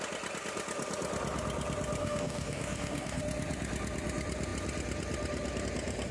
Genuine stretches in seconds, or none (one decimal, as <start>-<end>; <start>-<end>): 0.0-2.0; 3.2-6.1